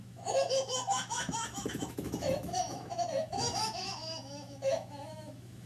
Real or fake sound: fake